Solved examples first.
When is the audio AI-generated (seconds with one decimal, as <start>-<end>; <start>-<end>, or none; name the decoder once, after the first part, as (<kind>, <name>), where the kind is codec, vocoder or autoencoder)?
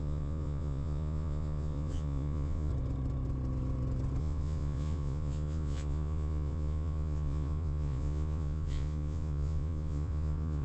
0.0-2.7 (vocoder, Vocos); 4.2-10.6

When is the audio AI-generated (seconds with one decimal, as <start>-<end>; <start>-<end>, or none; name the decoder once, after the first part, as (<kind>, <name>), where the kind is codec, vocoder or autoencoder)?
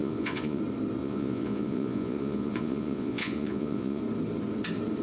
0.0-0.6 (vocoder, Vocos); 1.0-4.0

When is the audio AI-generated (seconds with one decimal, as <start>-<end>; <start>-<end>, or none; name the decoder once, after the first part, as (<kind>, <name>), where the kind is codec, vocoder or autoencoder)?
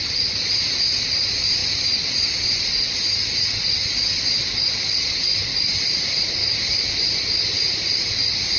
none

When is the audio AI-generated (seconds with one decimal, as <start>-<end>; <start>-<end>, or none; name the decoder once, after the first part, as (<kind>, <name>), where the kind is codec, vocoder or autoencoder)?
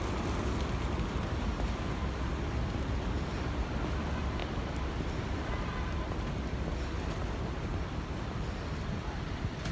none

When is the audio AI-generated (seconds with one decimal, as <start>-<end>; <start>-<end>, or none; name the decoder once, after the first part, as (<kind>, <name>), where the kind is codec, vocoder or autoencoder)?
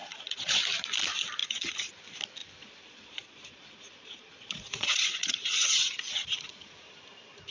0.0-0.6 (vocoder, Vocos); 1.4-1.9; 2.4-6.9